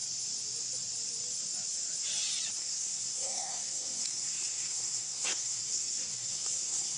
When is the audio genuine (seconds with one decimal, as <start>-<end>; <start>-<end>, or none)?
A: 0.0-2.6

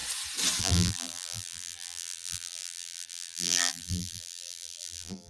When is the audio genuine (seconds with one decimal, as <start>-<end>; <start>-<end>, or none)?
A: 0.0-0.6

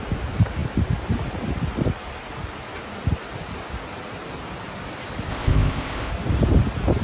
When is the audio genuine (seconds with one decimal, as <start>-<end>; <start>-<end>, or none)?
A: 0.0-5.3; 6.1-7.0

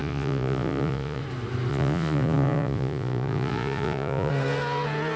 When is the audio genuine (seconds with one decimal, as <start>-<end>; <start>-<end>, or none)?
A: 1.2-1.7; 4.3-5.2

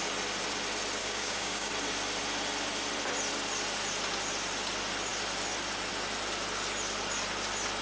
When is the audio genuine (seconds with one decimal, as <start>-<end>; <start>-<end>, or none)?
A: 0.0-1.0; 1.7-7.8

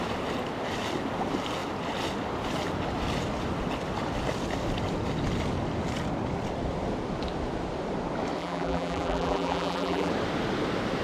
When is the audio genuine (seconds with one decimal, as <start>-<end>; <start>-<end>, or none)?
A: 0.0-8.4; 10.1-11.0